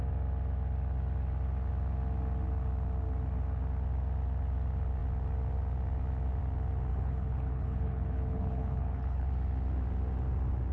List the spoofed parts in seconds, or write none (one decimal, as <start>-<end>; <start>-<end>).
6.9-9.3